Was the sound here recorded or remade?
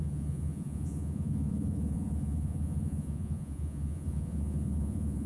remade